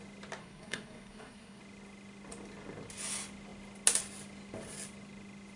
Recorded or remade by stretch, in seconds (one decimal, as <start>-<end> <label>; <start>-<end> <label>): 0.0-0.4 recorded; 0.4-1.6 remade; 1.6-5.6 recorded